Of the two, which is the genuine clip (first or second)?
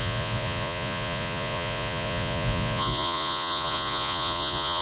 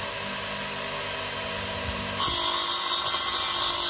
second